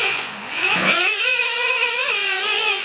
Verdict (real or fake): fake